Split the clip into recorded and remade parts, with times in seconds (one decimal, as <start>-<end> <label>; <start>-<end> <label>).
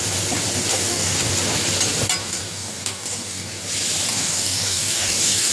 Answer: 0.0-0.7 recorded; 0.7-1.3 remade; 1.3-2.2 recorded; 2.2-3.6 remade; 3.6-4.1 recorded; 4.1-5.5 remade